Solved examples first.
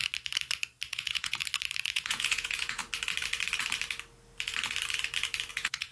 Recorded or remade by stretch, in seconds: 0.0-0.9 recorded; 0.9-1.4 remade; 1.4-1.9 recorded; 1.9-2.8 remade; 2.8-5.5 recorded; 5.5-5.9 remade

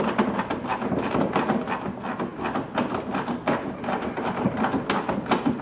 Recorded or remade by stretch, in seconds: 0.0-5.6 recorded